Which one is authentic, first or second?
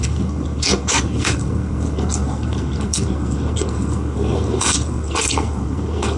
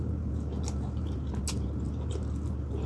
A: second